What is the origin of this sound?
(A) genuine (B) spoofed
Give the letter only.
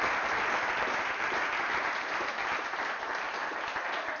A